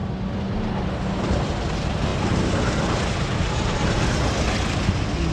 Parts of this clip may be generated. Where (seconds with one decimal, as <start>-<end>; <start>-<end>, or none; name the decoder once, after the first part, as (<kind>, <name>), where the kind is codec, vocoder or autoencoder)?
none